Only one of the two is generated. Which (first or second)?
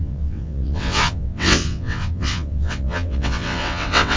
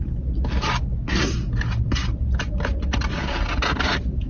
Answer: first